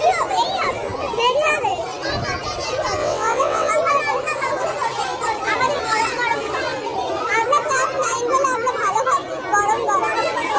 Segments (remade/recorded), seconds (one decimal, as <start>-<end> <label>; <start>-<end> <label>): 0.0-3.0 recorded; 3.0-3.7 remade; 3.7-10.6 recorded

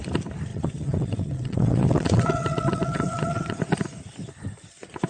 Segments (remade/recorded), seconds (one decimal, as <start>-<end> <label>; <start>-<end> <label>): 0.0-0.5 recorded; 0.5-3.6 remade; 3.6-5.1 recorded

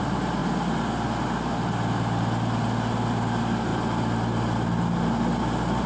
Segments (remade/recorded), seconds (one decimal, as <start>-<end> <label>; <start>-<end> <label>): 0.0-5.9 recorded

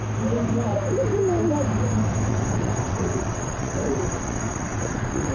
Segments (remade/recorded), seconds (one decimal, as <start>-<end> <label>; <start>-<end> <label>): 0.0-2.3 recorded; 2.3-5.3 remade

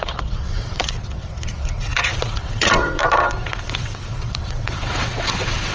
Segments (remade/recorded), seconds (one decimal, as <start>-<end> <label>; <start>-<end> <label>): 0.0-5.7 remade

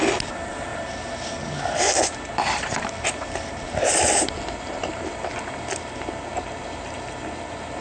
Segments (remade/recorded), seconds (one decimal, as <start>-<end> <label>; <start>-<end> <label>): 0.0-7.8 recorded

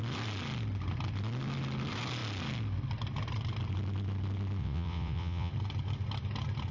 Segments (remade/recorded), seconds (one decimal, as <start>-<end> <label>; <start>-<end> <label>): 0.0-4.6 recorded; 4.6-5.5 remade; 5.5-6.7 recorded